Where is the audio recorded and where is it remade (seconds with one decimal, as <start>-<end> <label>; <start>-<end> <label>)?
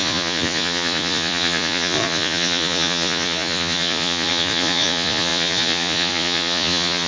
0.0-7.1 remade